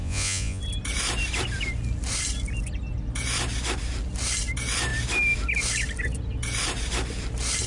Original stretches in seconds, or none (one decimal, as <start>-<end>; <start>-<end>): 0.6-7.7